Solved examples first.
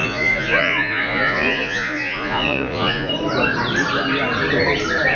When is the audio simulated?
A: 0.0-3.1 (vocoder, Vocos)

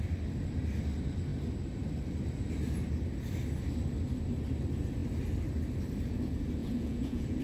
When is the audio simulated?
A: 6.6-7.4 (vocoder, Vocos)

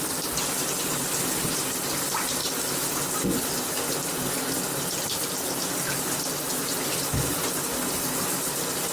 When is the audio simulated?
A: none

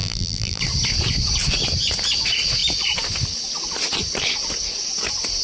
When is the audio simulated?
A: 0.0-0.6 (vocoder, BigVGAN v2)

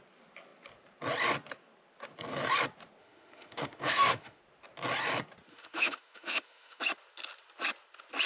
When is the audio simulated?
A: 3.0-4.4 (autoencoder, DAC-VAE); 5.5-6.8